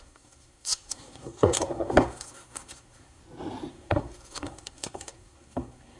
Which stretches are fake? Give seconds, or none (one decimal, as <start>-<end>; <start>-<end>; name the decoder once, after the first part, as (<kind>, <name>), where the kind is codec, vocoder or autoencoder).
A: 0.0-3.2 (codec, SNAC); 3.7-6.0